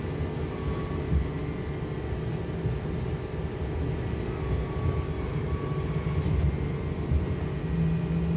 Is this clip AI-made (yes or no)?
no